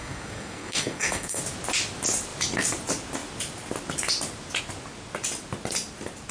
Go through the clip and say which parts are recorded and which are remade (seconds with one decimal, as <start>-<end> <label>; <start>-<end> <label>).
0.0-1.4 remade; 1.4-6.3 recorded

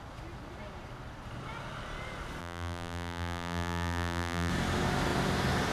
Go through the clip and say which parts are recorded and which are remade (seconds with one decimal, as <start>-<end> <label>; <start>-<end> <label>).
0.0-2.4 recorded; 2.4-4.5 remade; 4.5-5.7 recorded

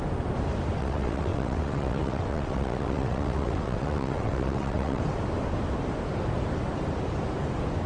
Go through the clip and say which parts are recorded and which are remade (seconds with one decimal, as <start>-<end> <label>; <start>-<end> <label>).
0.0-0.8 recorded; 0.8-5.0 remade; 5.0-7.9 recorded